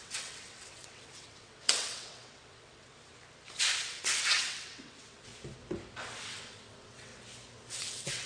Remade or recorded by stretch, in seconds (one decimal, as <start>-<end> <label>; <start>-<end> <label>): 0.0-2.9 remade; 2.9-3.9 recorded; 3.9-5.3 remade; 5.3-6.2 recorded; 6.2-7.1 remade; 7.1-7.7 recorded; 7.7-8.3 remade